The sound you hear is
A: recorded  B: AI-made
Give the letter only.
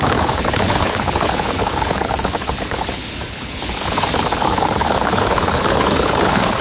B